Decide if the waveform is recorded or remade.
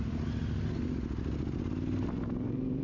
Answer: recorded